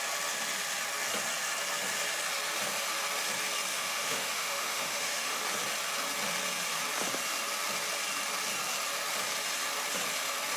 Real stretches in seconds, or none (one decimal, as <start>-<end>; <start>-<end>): 0.0-3.7; 5.4-10.6